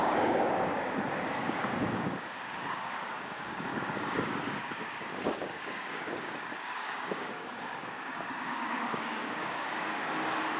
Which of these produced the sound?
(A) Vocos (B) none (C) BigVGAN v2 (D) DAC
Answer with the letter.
D